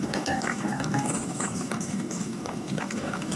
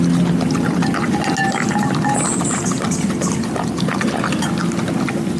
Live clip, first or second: second